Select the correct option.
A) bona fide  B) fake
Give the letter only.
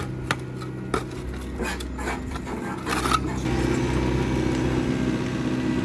A